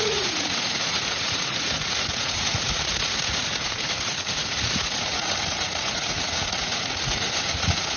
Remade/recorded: remade